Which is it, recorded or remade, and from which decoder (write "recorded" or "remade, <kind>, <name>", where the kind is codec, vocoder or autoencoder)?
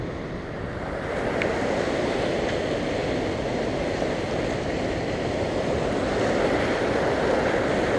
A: recorded